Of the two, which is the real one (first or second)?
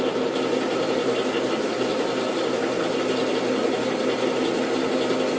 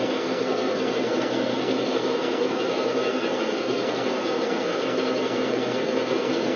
first